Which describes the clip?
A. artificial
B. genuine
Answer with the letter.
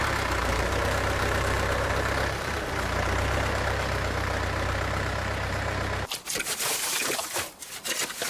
A